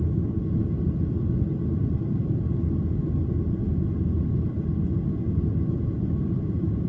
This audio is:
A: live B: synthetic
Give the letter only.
A